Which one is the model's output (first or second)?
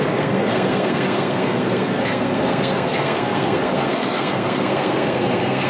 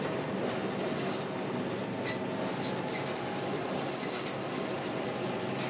first